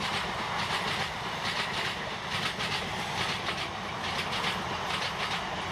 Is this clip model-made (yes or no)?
no